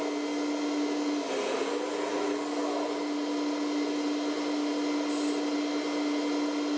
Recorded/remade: recorded